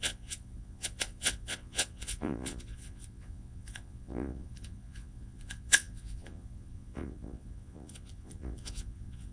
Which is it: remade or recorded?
remade